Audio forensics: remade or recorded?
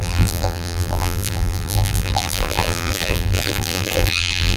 remade